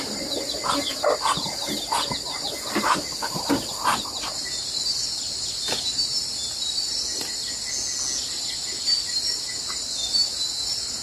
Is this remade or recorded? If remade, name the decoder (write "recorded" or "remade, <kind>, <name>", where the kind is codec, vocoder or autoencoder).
recorded